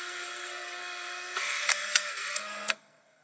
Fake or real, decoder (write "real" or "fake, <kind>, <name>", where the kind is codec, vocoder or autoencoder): fake, codec, SNAC